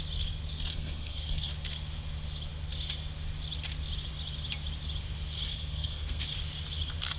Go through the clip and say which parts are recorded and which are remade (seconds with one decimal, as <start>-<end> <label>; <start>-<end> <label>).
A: 0.0-0.7 recorded; 0.7-1.5 remade; 1.5-5.5 recorded; 5.5-6.2 remade; 6.2-7.2 recorded